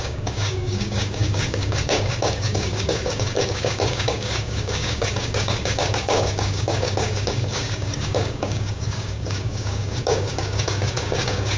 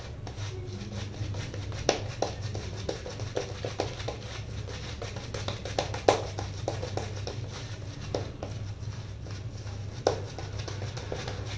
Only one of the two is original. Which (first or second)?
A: second